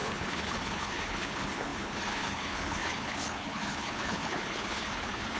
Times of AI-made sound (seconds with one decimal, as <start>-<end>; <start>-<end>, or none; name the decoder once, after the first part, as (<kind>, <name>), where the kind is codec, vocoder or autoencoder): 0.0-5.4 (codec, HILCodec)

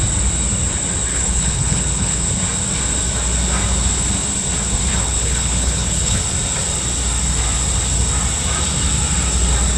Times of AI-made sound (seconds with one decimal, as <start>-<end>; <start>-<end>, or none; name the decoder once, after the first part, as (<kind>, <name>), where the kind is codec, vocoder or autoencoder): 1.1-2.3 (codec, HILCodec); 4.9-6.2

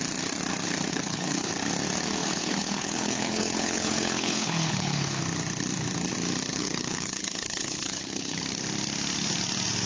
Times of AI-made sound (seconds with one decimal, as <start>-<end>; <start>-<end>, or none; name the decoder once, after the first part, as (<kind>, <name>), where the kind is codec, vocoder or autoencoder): 0.9-1.5 (codec, HILCodec); 2.2-5.2; 6.5-8.4

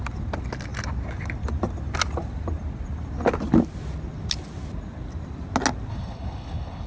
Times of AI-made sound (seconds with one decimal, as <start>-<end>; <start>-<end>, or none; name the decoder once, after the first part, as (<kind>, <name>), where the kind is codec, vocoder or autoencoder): 5.9-6.9 (codec, HILCodec)

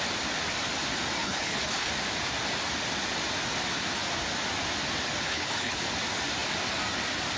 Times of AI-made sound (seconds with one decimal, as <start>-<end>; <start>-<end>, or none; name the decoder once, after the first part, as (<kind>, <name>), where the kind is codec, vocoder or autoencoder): 1.2-1.9 (codec, HILCodec); 5.3-5.8

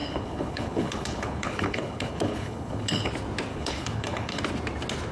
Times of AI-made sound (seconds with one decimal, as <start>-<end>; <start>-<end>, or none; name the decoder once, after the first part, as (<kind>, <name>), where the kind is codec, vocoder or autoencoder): 0.0-3.1 (codec, HILCodec); 3.5-4.4

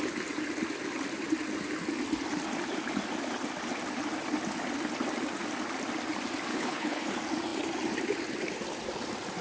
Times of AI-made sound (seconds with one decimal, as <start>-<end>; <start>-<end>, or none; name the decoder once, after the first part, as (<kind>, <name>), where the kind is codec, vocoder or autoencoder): 6.5-7.1 (codec, HILCodec)

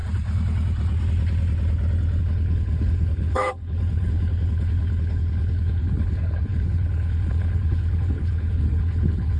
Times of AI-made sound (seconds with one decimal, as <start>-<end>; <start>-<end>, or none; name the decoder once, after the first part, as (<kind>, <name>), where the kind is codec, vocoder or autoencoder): 2.2-9.4 (codec, HILCodec)